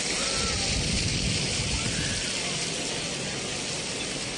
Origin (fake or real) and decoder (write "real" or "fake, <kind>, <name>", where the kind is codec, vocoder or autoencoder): real